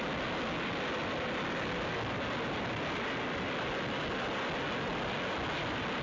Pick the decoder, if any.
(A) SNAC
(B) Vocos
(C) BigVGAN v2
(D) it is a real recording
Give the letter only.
D